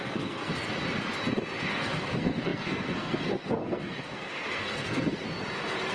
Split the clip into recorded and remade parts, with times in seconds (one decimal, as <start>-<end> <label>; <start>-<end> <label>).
0.0-0.5 remade; 0.5-1.7 recorded; 1.7-5.2 remade; 5.2-5.9 recorded